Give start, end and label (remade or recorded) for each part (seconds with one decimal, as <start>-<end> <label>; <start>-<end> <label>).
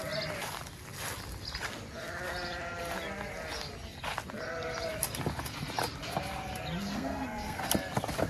0.0-6.8 recorded; 6.8-7.6 remade; 7.6-8.3 recorded